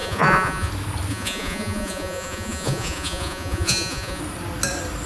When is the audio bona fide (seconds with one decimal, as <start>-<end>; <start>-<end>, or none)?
0.7-1.1; 4.2-5.1